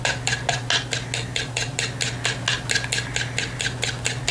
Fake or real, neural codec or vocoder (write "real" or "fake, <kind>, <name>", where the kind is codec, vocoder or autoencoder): real